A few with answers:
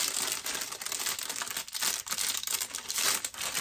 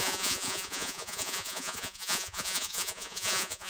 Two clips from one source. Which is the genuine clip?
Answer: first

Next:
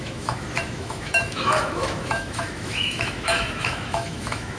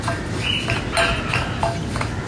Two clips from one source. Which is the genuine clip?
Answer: second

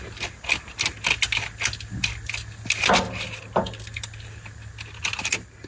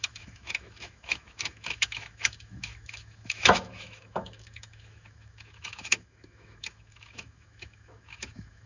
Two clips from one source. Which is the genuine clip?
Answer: first